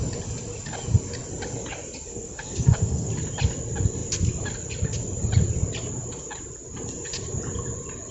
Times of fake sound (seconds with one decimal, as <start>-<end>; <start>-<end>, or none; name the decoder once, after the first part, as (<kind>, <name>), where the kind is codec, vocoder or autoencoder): 2.1-3.1 (codec, SNAC)